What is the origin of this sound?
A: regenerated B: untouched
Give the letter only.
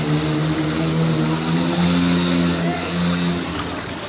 B